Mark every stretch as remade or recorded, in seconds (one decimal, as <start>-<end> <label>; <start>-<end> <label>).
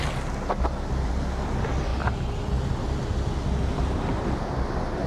0.0-5.1 recorded